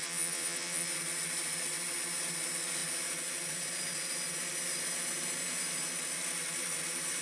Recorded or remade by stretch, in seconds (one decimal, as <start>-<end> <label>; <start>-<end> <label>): 0.0-0.9 remade; 0.9-7.2 recorded